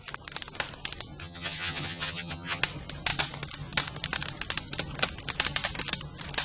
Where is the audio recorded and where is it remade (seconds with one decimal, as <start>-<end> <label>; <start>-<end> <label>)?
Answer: 0.0-1.2 recorded; 1.2-2.6 remade; 2.6-6.4 recorded